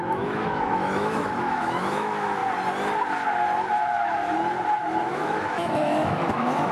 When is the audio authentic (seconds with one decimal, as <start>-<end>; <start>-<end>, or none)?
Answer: 2.4-4.8